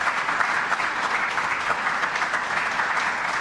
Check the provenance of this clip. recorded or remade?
recorded